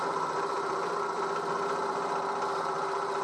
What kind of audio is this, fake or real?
fake